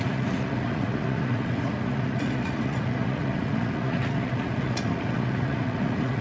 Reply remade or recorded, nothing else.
remade